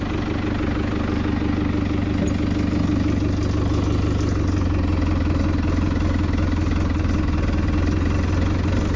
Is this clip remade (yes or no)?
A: no